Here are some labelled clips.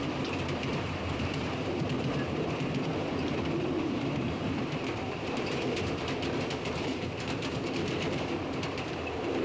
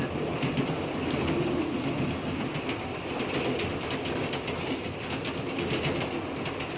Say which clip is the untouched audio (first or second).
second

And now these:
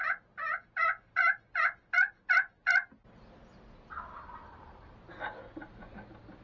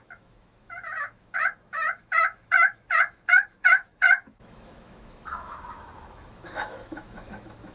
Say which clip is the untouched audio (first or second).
first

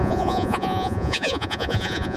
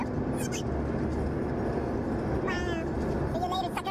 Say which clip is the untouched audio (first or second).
second